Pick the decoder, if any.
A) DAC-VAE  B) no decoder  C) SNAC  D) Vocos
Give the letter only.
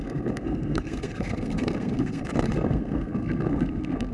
C